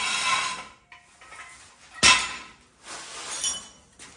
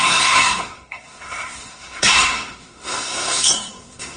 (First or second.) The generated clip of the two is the second